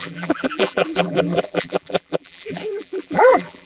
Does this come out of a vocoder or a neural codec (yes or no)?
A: yes